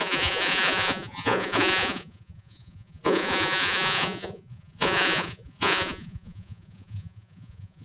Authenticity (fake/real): fake